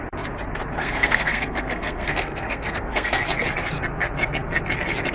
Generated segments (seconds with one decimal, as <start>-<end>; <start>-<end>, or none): 0.8-3.2